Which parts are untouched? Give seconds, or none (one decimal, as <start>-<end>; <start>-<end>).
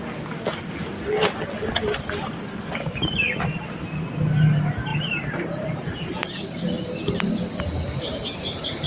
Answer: 0.0-1.8; 3.5-4.9; 6.1-8.9